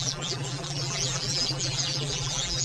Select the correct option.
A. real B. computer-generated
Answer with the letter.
B